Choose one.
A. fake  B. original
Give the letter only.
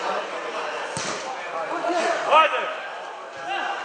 B